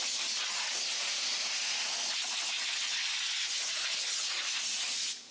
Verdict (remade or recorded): recorded